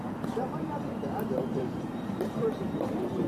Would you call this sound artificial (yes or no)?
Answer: yes